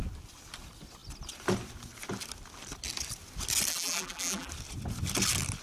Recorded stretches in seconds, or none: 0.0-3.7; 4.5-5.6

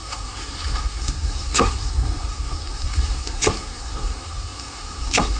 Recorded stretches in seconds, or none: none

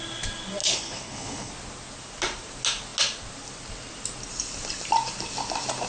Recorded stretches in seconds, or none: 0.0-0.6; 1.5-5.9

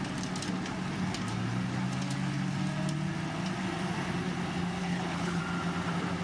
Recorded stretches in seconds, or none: 0.0-4.8; 5.4-6.2

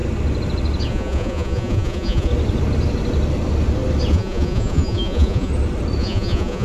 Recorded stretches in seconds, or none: 0.0-0.9; 2.3-4.1; 5.5-6.0

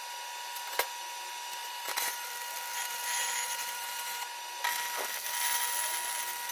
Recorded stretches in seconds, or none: 0.0-1.6; 2.3-2.7; 4.4-6.5

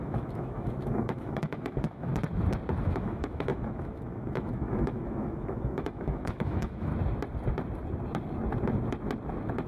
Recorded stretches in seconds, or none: 2.1-2.8; 6.9-9.7

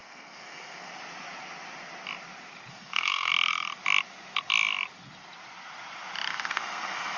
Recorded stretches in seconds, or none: 0.9-2.7; 3.3-6.3